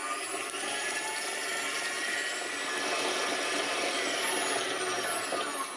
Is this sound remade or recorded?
recorded